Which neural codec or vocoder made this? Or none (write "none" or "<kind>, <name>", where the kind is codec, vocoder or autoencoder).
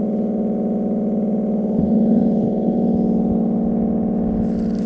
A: none